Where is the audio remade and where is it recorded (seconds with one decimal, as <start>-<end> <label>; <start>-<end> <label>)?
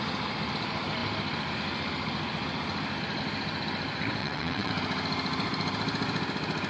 0.0-4.2 recorded; 4.2-4.7 remade; 4.7-6.7 recorded